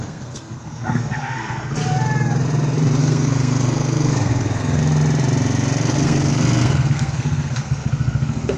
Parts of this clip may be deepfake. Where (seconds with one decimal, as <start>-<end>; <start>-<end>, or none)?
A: 0.0-1.8; 3.0-4.8; 5.9-8.6